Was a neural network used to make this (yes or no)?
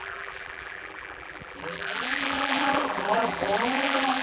yes